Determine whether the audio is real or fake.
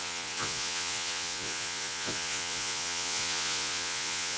fake